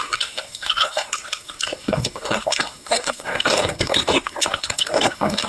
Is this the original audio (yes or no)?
no